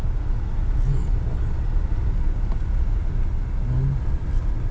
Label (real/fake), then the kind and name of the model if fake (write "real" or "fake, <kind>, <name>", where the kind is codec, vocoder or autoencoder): real